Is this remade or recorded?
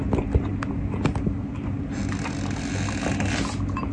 recorded